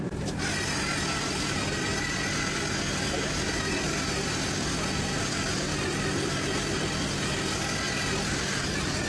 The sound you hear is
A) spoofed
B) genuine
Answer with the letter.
B